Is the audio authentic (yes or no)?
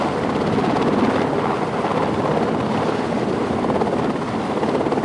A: yes